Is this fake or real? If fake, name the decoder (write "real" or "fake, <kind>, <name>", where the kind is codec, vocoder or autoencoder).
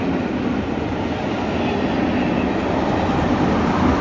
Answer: real